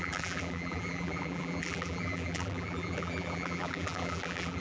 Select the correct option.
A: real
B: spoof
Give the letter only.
B